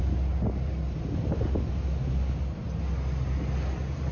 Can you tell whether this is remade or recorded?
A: recorded